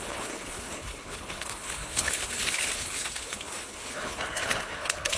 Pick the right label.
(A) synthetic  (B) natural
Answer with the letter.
A